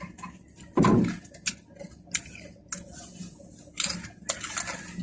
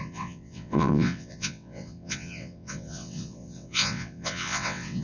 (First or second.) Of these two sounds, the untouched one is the first